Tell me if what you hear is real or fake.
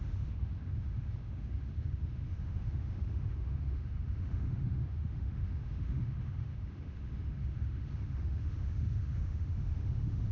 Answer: fake